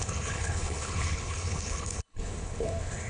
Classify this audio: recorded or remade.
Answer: remade